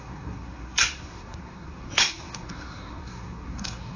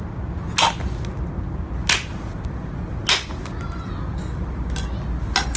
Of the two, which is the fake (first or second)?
first